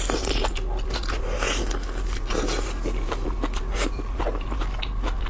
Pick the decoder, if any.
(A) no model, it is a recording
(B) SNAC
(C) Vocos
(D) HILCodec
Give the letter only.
A